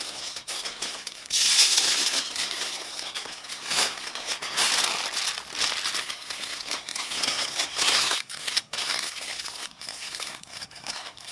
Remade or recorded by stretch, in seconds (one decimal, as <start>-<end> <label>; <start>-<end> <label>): 0.0-4.7 remade; 4.7-6.0 recorded; 6.0-11.3 remade